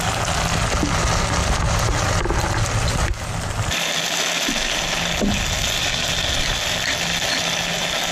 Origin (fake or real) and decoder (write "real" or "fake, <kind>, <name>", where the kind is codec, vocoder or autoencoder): real